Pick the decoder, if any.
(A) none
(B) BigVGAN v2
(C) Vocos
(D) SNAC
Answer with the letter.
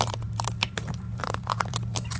B